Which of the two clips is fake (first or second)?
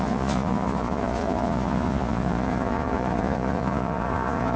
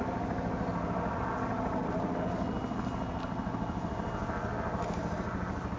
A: first